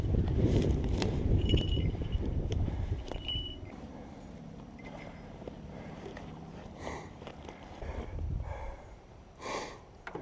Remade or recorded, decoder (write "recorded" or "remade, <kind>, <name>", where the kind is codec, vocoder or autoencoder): remade, vocoder, BigVGAN v2